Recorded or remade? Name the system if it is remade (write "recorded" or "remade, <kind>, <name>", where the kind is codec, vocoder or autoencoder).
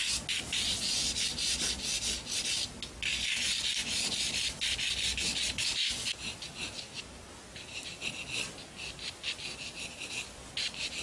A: recorded